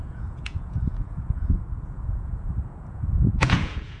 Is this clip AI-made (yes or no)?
yes